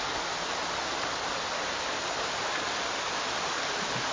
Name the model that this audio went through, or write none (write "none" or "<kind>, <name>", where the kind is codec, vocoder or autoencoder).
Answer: none